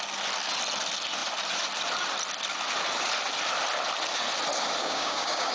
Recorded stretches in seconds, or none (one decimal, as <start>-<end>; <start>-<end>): 0.0-4.8